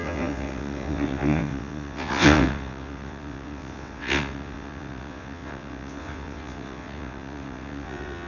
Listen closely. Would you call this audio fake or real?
fake